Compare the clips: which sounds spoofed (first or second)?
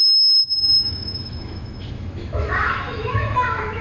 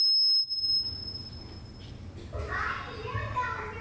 first